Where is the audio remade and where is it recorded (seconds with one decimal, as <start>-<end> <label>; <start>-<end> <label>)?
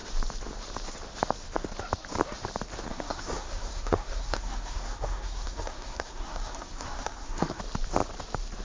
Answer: 0.0-2.9 recorded; 2.9-7.6 remade; 7.6-8.6 recorded